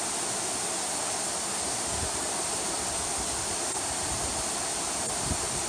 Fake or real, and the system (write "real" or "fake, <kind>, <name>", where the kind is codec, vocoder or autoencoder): real